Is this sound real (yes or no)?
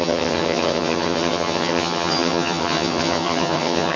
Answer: no